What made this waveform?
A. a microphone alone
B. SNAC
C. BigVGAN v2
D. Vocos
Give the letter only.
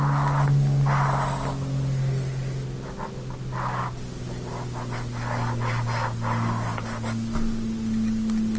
A